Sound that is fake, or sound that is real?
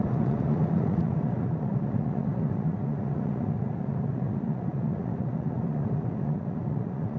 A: fake